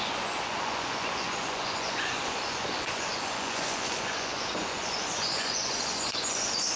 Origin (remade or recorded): remade